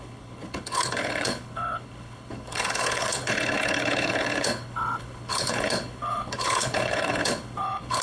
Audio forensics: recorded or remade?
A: remade